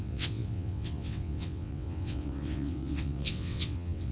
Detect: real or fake fake